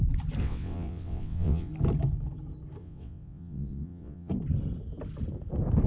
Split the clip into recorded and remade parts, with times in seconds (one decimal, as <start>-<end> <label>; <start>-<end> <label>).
0.0-0.4 recorded; 0.4-1.7 remade; 1.7-2.8 recorded; 2.8-4.3 remade; 4.3-5.9 recorded